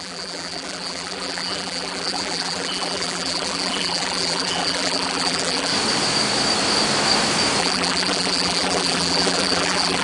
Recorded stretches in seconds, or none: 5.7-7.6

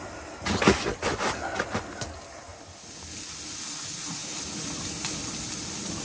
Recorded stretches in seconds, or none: 0.0-4.2; 5.3-6.0